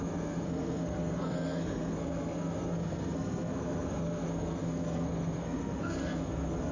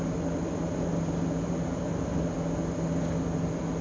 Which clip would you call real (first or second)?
second